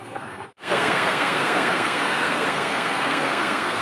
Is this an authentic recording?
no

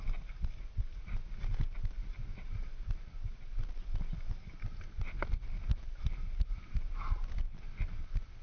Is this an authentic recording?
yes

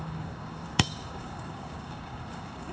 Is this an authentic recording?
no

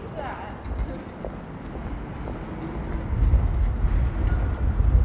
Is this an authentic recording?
yes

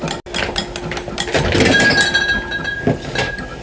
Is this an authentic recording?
yes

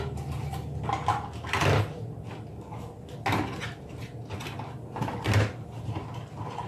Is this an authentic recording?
yes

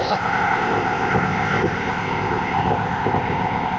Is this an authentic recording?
no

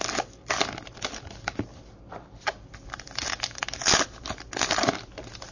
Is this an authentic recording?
yes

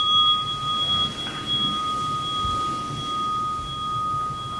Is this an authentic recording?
yes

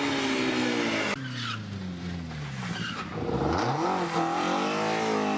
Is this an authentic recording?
yes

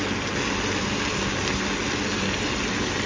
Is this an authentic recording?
yes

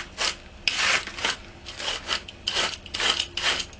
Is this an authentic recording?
yes